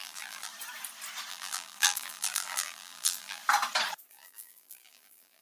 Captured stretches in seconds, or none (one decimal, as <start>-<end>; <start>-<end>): 0.5-1.3; 3.4-4.1